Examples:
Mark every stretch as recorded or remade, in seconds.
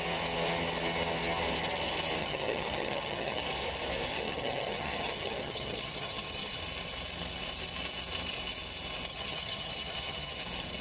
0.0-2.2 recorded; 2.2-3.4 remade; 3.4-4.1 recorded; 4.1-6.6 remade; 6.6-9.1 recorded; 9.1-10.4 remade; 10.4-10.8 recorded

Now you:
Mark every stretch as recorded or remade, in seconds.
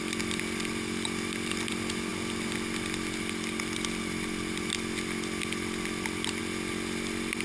0.0-7.4 recorded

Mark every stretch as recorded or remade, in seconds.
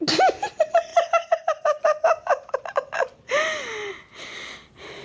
0.0-5.0 recorded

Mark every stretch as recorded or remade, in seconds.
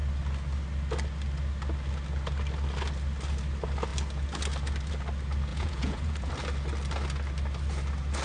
0.0-5.5 recorded; 5.5-6.3 remade; 6.3-8.2 recorded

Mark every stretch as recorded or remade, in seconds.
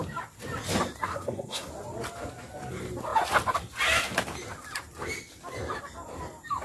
0.0-1.0 recorded; 1.0-1.7 remade; 1.7-6.6 recorded